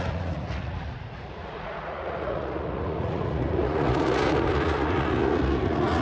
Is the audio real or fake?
fake